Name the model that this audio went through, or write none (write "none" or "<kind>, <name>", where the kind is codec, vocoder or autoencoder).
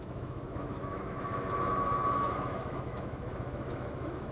autoencoder, DAC-VAE